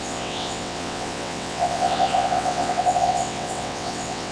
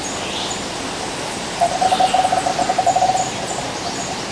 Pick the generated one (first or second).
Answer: first